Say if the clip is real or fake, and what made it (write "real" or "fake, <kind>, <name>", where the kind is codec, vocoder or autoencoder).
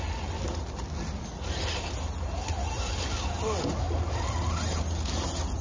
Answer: real